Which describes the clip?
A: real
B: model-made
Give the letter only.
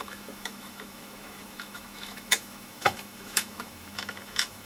B